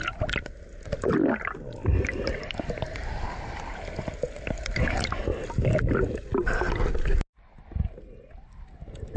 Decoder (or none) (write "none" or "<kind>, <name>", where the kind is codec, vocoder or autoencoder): none